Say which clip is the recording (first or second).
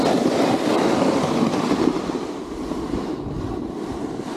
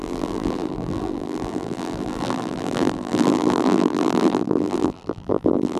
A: first